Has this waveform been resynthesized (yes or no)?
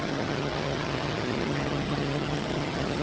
yes